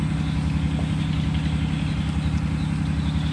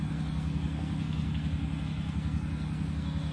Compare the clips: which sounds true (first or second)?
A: first